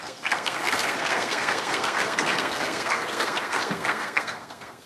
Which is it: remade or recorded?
remade